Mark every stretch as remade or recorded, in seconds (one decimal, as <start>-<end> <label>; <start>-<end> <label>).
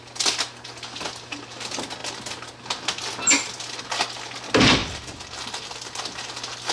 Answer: 0.0-6.7 recorded